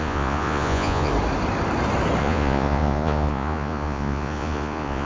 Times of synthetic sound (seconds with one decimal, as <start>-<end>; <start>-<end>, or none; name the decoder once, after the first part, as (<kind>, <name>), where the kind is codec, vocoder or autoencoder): 0.0-1.1 (vocoder, Vocos); 2.2-5.1